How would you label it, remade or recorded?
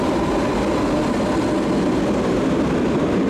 recorded